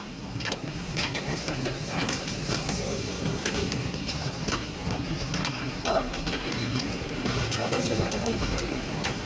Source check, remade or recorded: remade